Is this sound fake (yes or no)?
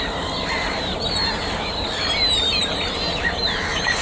yes